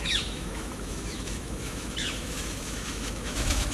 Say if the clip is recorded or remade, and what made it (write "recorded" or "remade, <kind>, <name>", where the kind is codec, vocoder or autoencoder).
remade, autoencoder, DAC-VAE